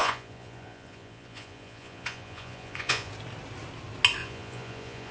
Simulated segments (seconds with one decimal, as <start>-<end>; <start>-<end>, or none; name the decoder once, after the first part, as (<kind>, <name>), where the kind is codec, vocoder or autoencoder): 0.0-3.1 (vocoder, Vocos); 4.2-5.1